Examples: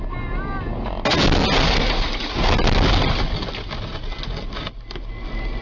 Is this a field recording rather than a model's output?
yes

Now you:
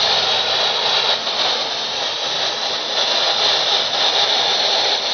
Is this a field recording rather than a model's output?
yes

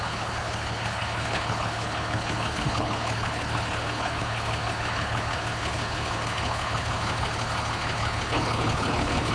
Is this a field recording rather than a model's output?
no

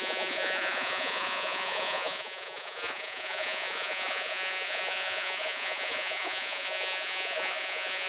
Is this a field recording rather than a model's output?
no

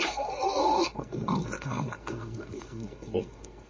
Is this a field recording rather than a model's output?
no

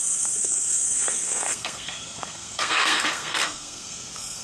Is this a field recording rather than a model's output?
no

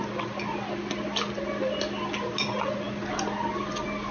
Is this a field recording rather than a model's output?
yes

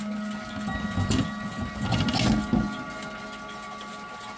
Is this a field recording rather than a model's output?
yes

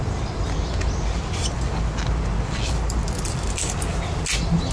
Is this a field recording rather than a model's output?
yes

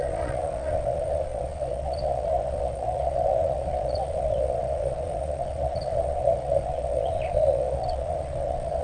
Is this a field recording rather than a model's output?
no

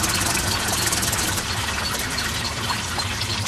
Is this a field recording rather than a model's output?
no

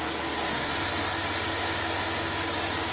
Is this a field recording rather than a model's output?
yes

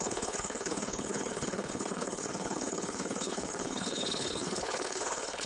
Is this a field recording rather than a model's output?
no